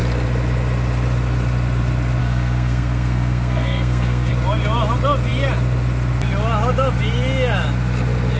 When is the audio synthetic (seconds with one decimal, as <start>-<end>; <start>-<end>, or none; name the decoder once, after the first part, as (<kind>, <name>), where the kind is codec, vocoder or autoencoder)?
2.2-4.3 (codec, SNAC)